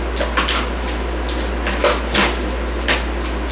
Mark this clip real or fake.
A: real